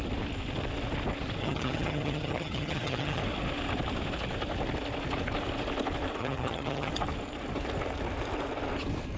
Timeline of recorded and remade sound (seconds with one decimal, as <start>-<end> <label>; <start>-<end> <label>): 0.0-1.4 recorded; 1.4-3.2 remade; 3.2-6.2 recorded; 6.2-6.9 remade; 6.9-9.2 recorded